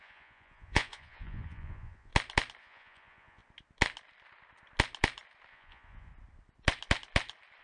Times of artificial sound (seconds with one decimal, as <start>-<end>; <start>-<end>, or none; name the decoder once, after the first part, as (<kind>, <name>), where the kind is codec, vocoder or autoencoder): 0.0-2.1 (vocoder, Vocos); 2.6-3.4; 5.5-6.1